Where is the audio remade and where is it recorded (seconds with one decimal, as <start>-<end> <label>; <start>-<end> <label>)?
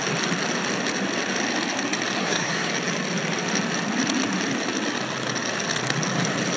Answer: 0.0-2.2 recorded; 2.2-2.7 remade; 2.7-6.6 recorded